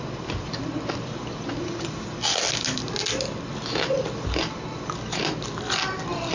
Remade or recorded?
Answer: recorded